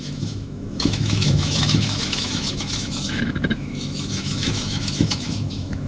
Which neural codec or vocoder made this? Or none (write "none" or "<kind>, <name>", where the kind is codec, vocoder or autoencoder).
autoencoder, DAC-VAE